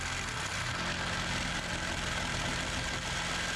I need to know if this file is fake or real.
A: real